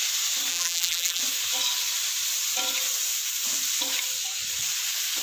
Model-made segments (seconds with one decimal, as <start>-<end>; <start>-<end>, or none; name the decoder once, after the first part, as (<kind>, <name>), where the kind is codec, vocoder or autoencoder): 0.5-1.2 (vocoder, BigVGAN v2)

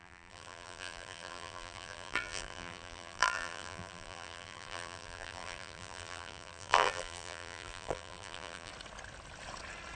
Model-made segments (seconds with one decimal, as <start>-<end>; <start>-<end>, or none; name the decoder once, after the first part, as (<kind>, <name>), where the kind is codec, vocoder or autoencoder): 0.0-8.7 (vocoder, BigVGAN v2)

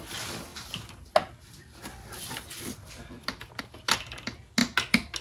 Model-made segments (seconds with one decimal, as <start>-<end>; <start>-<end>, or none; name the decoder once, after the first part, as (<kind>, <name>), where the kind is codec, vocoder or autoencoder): none

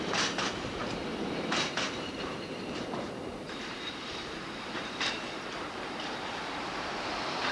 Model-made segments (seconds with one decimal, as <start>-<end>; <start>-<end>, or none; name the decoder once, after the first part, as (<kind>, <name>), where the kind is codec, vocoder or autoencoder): 0.0-7.5 (vocoder, BigVGAN v2)